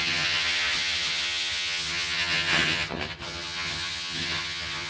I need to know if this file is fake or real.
fake